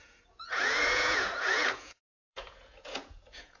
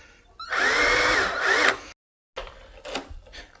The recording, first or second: second